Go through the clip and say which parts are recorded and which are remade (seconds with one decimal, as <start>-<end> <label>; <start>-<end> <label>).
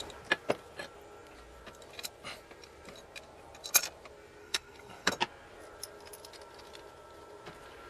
0.0-4.4 recorded; 4.4-5.1 remade; 5.1-7.9 recorded